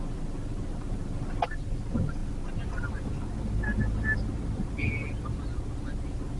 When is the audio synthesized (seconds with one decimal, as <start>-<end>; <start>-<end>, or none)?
none